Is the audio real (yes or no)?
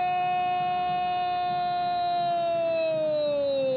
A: yes